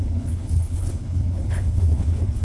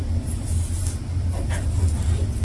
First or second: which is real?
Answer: second